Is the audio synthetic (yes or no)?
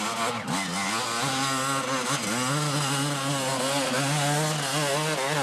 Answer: no